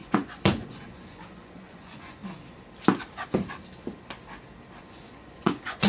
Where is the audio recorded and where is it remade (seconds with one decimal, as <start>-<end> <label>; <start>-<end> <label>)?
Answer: 0.0-2.2 remade; 2.2-4.8 recorded; 4.8-5.9 remade